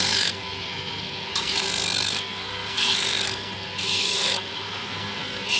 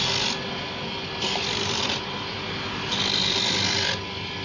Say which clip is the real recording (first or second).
second